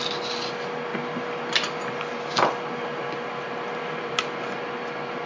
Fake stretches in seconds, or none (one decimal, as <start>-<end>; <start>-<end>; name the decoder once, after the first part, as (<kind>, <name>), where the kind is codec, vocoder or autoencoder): none